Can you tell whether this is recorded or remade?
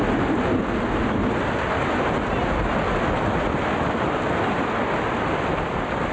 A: recorded